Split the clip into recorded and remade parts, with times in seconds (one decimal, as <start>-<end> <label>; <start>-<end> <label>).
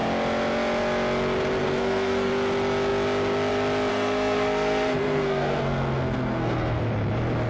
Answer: 0.0-1.6 recorded; 1.6-2.3 remade; 2.3-3.9 recorded; 3.9-6.8 remade; 6.8-7.5 recorded